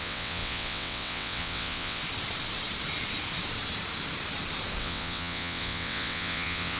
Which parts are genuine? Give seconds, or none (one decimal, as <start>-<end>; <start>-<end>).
2.0-4.8